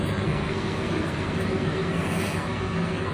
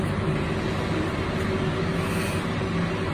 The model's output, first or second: first